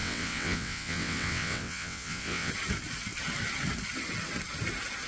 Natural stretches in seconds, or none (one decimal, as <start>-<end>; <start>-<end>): 2.5-5.1